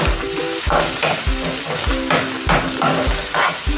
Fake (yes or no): no